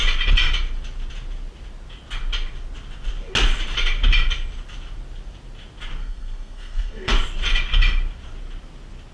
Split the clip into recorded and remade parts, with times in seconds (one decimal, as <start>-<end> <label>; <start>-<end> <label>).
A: 0.0-6.0 recorded; 6.0-7.1 remade; 7.1-9.1 recorded